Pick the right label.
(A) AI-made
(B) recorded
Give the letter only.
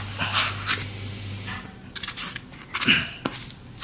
B